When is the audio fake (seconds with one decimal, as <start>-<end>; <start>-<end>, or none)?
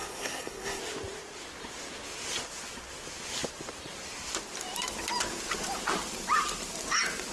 0.0-0.8